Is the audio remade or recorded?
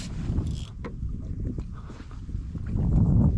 recorded